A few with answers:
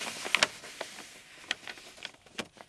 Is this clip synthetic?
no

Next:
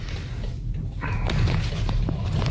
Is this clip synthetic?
no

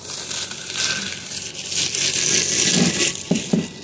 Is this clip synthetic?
no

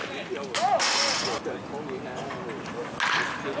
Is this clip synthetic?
no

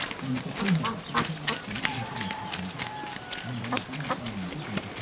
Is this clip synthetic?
no